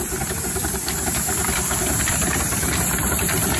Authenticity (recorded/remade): recorded